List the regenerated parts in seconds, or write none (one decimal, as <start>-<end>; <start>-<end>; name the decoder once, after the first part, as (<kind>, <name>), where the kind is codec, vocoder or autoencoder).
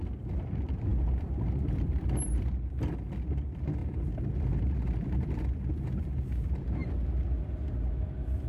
0.9-2.5 (vocoder, BigVGAN v2); 3.8-6.1